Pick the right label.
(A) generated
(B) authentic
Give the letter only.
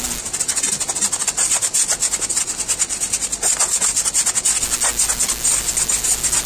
B